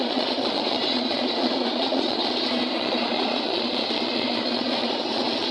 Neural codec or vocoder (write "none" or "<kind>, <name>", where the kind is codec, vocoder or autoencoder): vocoder, Vocos